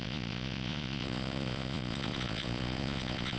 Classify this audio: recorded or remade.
remade